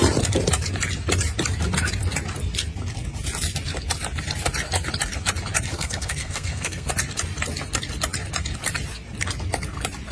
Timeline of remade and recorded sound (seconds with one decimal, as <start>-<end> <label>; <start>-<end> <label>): 0.0-5.7 recorded; 5.7-6.9 remade; 6.9-10.1 recorded